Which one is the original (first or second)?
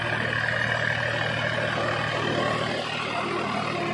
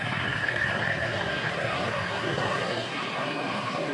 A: first